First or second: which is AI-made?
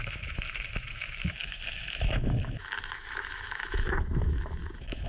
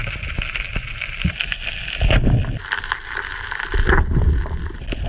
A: first